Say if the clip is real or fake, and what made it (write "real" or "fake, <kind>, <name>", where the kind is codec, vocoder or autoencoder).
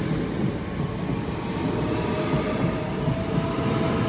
real